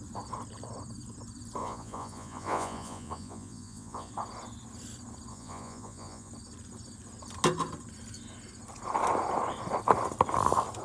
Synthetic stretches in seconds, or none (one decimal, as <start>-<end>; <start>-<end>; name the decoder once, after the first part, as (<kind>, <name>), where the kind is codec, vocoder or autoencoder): 1.6-4.1 (vocoder, Vocos); 5.3-6.3